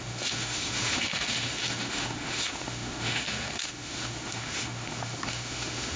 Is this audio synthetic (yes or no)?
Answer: yes